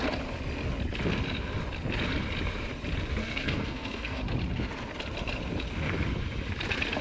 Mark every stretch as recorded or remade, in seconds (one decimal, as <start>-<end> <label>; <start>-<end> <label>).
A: 0.0-3.2 recorded; 3.2-4.2 remade; 4.2-7.0 recorded